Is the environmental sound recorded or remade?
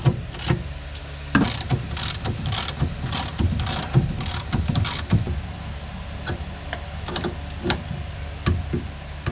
recorded